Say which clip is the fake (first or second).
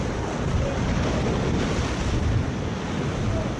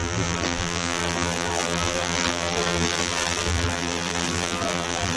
second